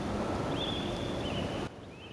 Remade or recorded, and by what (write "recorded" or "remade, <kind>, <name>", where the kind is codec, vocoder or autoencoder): recorded